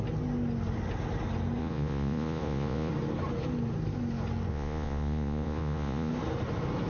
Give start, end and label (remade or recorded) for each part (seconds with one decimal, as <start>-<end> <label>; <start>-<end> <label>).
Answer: 0.0-1.6 recorded; 1.6-2.9 remade; 2.9-4.5 recorded; 4.5-6.1 remade; 6.1-6.9 recorded